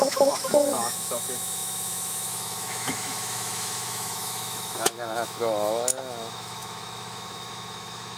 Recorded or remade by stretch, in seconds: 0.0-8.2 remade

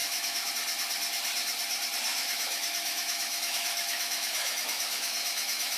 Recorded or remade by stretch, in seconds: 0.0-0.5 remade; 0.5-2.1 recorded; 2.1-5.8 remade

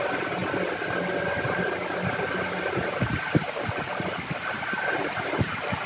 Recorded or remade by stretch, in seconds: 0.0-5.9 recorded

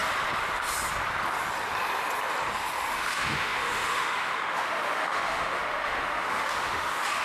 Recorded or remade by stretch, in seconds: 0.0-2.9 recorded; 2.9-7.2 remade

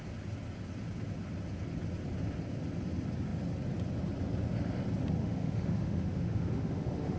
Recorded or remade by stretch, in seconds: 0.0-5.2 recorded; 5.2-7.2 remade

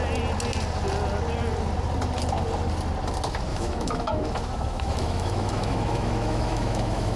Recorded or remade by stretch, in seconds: 0.0-3.5 recorded; 3.5-7.2 remade